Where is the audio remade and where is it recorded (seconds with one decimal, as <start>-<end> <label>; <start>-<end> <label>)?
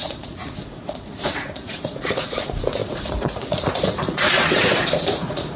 0.0-5.6 remade